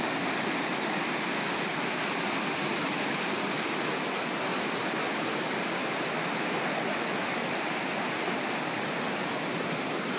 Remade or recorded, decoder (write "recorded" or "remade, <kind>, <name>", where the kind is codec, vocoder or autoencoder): recorded